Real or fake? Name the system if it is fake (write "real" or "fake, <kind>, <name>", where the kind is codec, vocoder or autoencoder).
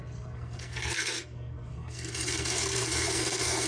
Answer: fake, codec, SNAC